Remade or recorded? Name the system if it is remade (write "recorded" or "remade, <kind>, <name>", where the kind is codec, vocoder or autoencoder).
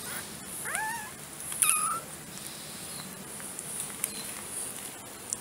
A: remade, vocoder, BigVGAN v2